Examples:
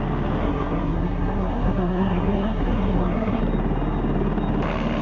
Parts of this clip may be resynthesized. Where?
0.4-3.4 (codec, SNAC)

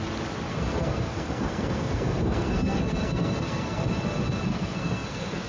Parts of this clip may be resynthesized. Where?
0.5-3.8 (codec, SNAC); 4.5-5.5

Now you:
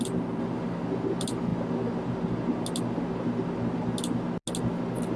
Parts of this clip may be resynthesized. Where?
none

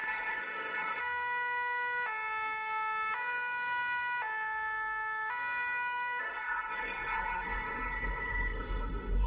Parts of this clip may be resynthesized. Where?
0.0-1.0 (codec, SNAC); 6.2-9.3